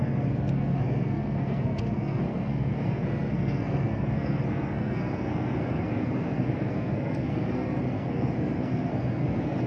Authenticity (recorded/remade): remade